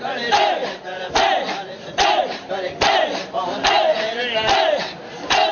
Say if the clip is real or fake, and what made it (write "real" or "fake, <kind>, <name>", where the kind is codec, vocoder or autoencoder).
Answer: real